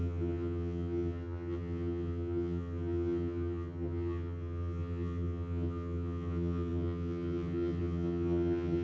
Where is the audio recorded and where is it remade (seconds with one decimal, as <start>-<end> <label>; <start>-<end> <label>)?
0.0-8.8 remade